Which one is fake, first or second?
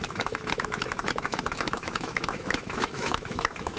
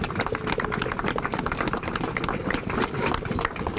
first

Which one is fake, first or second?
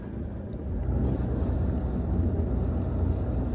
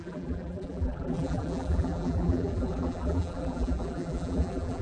second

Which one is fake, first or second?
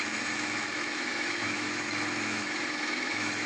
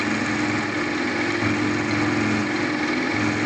first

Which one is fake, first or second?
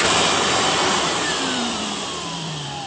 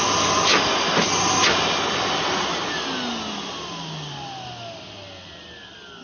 first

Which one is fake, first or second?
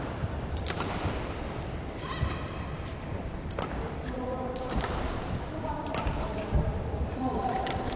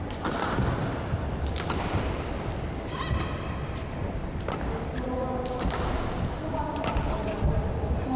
first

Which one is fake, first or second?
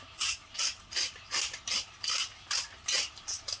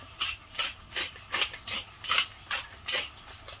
first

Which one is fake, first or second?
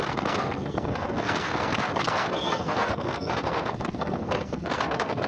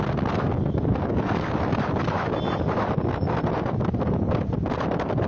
first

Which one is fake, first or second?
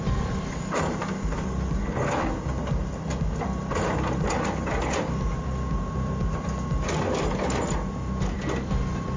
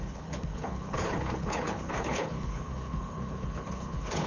second